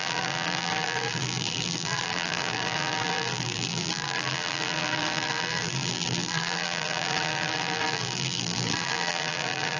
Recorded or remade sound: remade